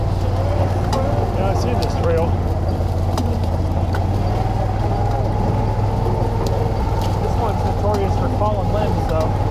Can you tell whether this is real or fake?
real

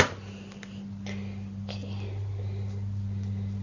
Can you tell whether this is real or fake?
real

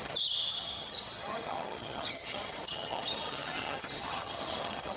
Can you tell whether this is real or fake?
fake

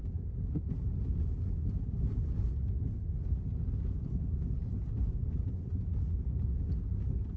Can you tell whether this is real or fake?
real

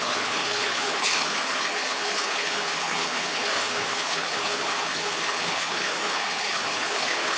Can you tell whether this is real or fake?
fake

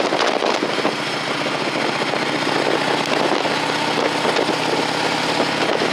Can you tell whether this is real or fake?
real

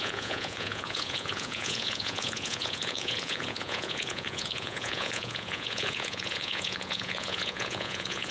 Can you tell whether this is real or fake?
fake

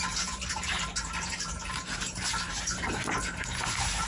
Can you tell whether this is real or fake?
fake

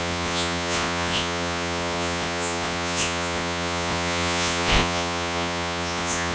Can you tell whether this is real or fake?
fake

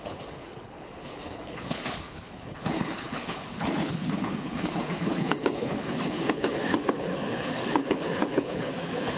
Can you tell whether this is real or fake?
fake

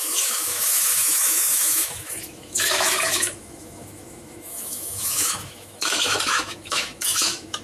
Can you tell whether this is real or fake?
fake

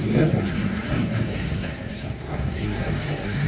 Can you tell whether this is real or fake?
fake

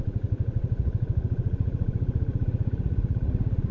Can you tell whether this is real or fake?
fake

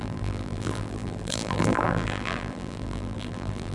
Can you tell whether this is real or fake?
fake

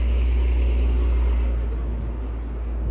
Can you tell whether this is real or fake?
real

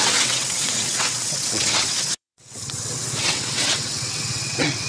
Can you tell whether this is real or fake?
fake